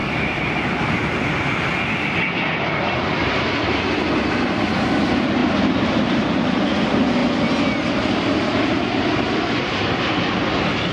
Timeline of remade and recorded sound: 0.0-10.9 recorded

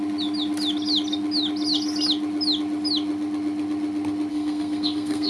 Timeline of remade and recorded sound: 0.0-4.3 recorded; 4.3-5.3 remade

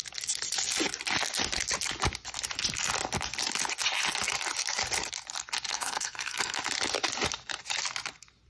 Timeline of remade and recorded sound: 0.0-5.7 recorded; 5.7-6.6 remade; 6.6-8.5 recorded

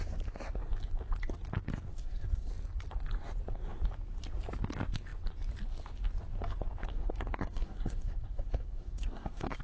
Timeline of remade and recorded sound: 0.0-1.9 recorded; 1.9-2.5 remade; 2.5-6.9 recorded; 6.9-9.6 remade

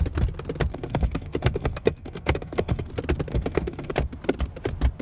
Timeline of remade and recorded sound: 0.0-0.7 recorded; 0.7-2.9 remade; 2.9-3.3 recorded; 3.3-3.9 remade; 3.9-5.0 recorded